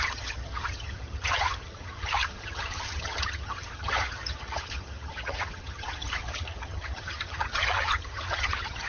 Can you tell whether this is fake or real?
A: fake